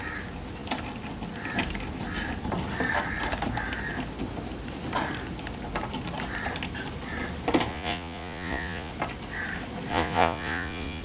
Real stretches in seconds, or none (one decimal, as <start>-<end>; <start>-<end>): 0.0-7.7; 8.9-9.9